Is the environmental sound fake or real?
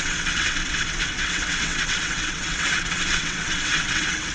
fake